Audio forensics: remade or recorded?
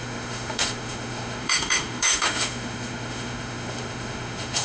remade